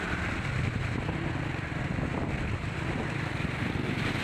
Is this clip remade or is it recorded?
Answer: remade